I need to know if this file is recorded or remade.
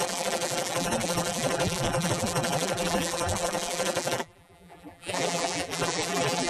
remade